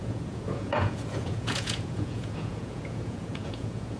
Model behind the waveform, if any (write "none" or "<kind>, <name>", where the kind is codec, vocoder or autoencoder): vocoder, Vocos